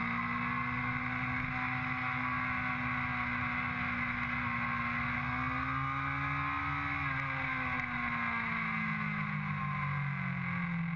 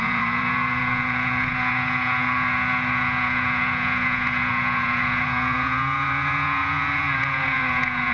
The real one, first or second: first